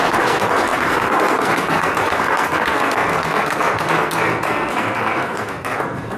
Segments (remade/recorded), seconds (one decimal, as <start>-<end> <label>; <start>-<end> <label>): 0.0-6.2 remade